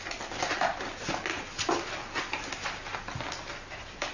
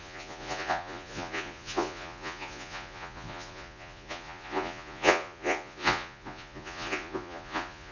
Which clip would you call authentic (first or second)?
first